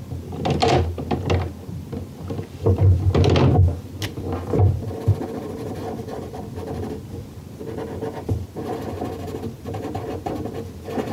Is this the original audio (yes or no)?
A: yes